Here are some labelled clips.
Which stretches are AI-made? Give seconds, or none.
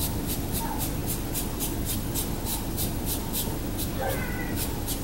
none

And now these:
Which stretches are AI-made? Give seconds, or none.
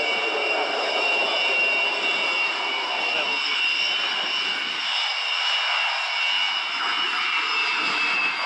0.0-5.1; 7.8-8.5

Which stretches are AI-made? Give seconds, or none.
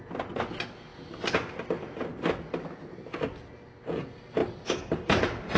4.4-5.6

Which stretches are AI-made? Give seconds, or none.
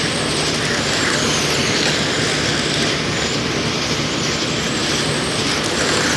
1.6-2.5; 4.8-5.5